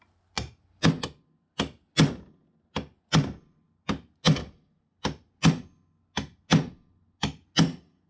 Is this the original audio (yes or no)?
yes